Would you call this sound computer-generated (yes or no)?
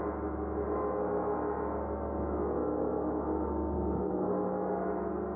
no